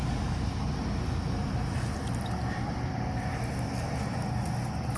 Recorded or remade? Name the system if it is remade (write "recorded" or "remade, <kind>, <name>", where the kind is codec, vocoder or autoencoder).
recorded